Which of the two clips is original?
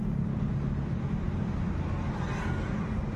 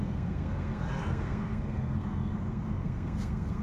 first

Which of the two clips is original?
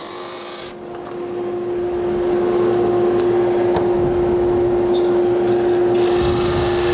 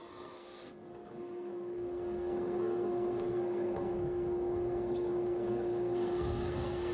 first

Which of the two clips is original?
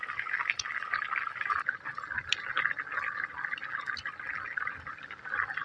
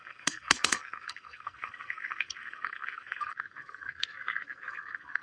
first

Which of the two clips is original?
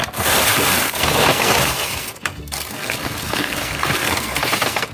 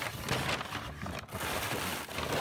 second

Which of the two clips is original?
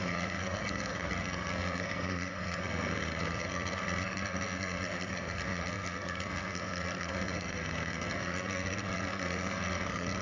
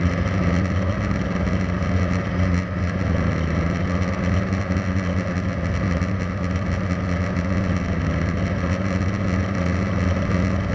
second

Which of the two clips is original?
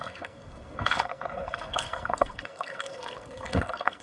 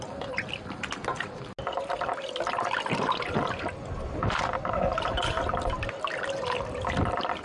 second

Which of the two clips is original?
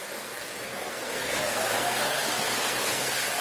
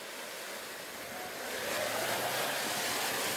second